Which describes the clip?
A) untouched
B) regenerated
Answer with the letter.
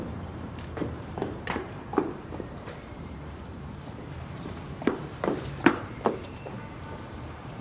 B